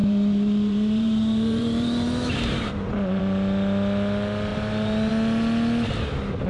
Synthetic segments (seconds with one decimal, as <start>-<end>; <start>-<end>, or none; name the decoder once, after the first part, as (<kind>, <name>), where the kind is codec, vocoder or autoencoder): 0.0-3.2 (vocoder, BigVGAN v2); 4.5-5.1